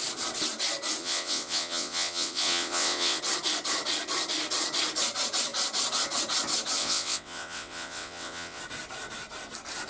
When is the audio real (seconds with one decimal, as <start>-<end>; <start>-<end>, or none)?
0.0-1.0; 3.2-6.8; 8.6-9.9